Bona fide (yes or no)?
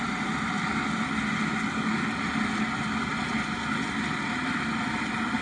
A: yes